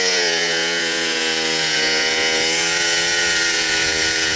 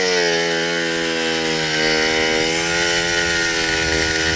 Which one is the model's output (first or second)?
first